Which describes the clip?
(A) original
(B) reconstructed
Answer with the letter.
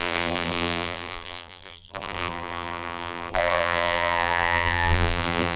B